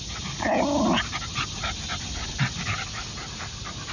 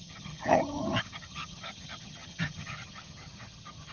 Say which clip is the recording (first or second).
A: first